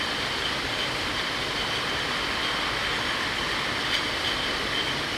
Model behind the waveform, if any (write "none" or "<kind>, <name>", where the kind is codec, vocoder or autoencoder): none